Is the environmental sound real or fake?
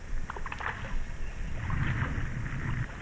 real